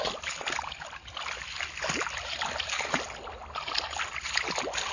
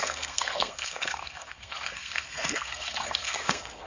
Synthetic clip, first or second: second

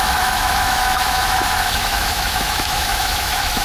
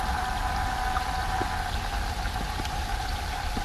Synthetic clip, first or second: first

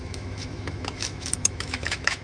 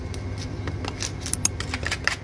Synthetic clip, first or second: first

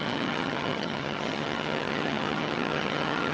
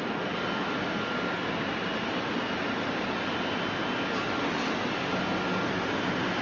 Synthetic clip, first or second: first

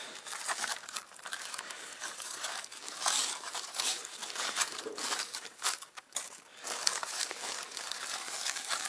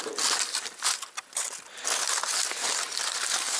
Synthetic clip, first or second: first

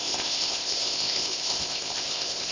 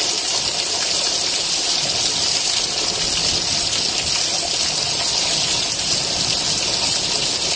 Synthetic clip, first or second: first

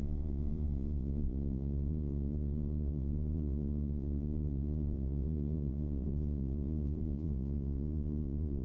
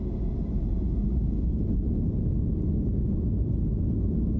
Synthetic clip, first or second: first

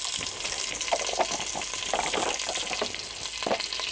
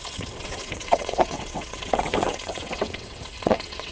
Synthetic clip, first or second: second